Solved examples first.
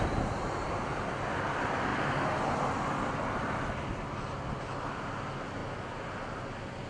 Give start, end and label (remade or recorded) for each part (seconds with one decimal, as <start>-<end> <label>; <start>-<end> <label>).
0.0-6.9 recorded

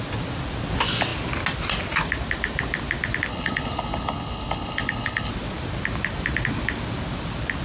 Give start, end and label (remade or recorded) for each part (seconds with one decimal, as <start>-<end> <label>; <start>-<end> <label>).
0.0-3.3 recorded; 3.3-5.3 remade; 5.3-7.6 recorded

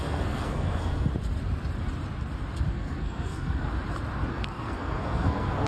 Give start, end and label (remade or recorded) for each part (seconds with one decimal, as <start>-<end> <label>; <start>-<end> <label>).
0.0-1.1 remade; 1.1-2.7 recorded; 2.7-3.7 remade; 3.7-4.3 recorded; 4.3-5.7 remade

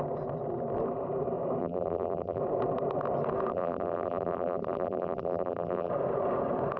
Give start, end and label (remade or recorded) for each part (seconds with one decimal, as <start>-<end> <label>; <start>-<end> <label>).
0.0-1.6 recorded; 1.6-2.4 remade; 2.4-3.5 recorded; 3.5-5.9 remade; 5.9-6.8 recorded

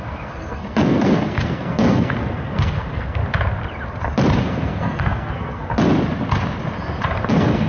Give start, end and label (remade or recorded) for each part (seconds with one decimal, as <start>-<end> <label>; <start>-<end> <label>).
0.0-3.2 remade; 3.2-4.4 recorded; 4.4-5.7 remade; 5.7-7.3 recorded; 7.3-7.7 remade

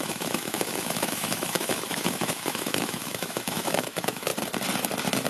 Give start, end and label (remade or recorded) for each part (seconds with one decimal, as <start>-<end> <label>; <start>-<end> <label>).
0.0-4.3 remade; 4.3-5.3 recorded

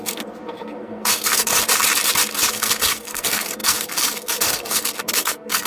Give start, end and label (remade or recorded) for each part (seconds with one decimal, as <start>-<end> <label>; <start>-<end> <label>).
0.0-1.5 remade; 1.5-2.5 recorded; 2.5-5.7 remade